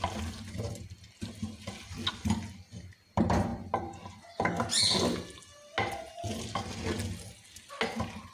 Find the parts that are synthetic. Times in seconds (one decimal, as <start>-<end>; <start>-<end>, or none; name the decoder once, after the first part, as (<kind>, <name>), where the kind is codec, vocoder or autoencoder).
none